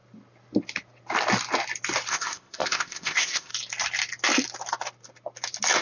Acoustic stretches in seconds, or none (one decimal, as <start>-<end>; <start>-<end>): 0.0-2.1; 3.5-5.8